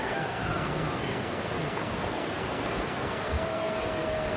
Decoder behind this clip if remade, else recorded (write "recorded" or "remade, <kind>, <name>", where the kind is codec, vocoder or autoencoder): remade, codec, SNAC